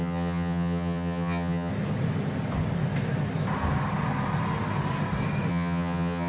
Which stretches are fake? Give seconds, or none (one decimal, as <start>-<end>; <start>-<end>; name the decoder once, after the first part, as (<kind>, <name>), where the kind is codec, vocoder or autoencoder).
0.0-1.7 (vocoder, HiFi-GAN); 5.5-6.3